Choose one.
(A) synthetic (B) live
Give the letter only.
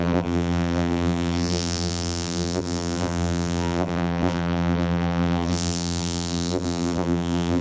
A